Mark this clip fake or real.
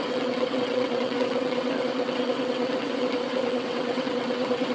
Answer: fake